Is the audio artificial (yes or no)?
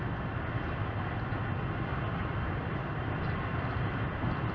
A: no